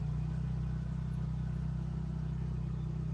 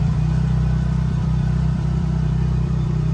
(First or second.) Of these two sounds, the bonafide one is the first